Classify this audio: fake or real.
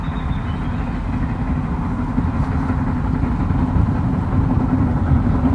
real